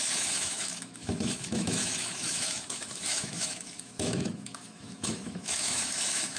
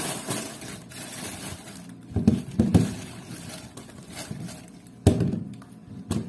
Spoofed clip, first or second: first